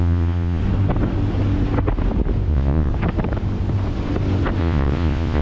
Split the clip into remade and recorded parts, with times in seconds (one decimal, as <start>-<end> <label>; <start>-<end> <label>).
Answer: 0.0-0.6 remade; 0.6-2.5 recorded; 2.5-2.9 remade; 2.9-4.6 recorded; 4.6-5.4 remade